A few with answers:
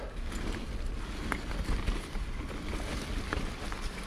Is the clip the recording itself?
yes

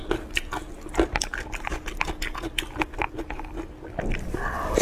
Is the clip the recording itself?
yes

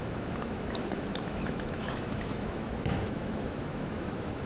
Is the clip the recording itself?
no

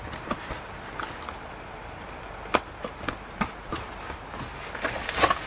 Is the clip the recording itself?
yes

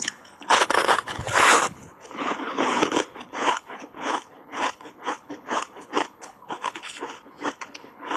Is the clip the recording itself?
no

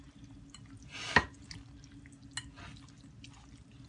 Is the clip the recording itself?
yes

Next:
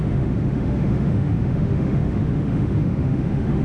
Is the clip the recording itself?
no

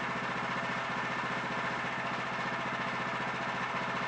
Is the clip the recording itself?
yes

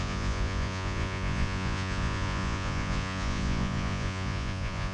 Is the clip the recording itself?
no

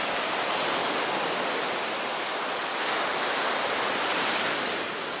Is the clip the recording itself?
yes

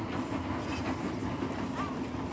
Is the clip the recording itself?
yes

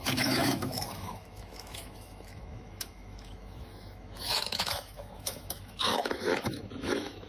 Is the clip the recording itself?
no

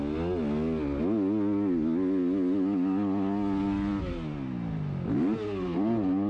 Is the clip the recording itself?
yes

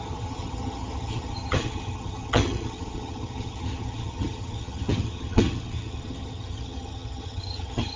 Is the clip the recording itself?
no